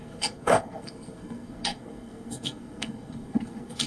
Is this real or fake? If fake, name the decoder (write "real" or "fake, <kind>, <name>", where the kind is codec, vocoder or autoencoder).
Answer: fake, codec, SNAC